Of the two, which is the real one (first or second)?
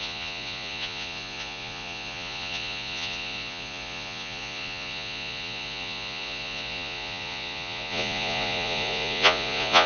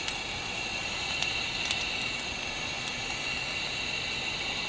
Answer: second